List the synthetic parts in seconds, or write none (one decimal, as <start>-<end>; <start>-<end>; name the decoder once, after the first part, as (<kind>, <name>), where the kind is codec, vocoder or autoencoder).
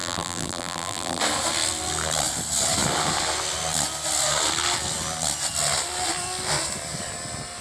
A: 0.0-1.2 (vocoder, BigVGAN v2)